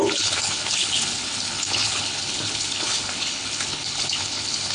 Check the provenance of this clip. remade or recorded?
remade